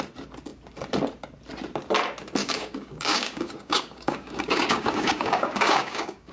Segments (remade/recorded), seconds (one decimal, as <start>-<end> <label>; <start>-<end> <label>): 0.0-2.4 recorded; 2.4-6.3 remade